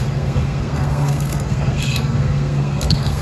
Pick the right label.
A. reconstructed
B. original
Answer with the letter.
A